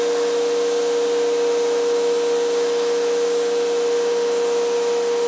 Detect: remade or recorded recorded